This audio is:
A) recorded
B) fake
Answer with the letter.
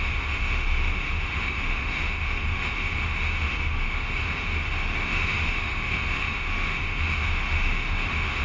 B